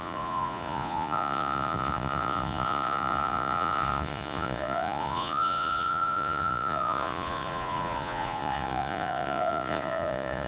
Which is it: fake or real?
fake